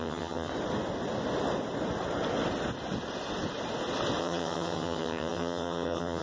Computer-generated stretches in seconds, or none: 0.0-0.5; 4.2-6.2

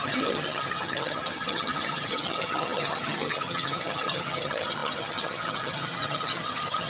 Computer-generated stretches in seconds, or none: 0.0-6.9

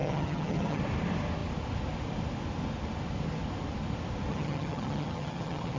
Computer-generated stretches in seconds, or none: 0.0-0.8; 4.3-5.8

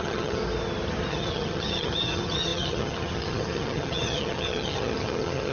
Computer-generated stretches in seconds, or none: 0.0-0.4; 1.1-5.5

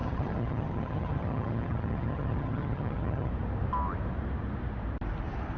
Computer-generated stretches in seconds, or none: 0.0-3.3

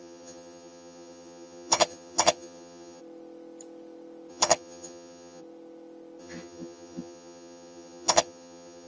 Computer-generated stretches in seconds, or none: 0.0-3.0; 4.3-5.4; 6.2-8.9